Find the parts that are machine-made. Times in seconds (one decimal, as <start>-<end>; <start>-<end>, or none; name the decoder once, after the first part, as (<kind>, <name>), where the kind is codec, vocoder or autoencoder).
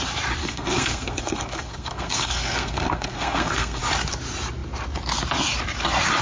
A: 0.4-3.8 (codec, SNAC)